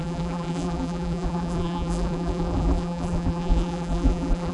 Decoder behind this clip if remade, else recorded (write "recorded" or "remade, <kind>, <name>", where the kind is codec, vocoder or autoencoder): remade, vocoder, BigVGAN v2